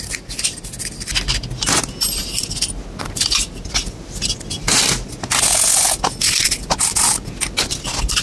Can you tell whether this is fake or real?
real